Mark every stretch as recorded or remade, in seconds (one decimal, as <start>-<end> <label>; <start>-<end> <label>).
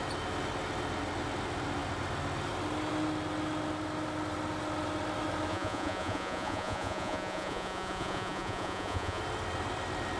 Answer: 0.0-5.5 recorded; 5.5-9.2 remade; 9.2-10.2 recorded